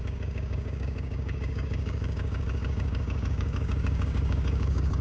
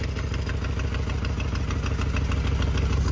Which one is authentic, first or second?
second